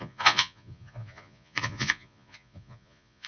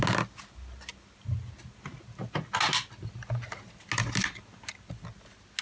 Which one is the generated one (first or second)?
first